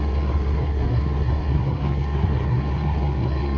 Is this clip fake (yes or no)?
yes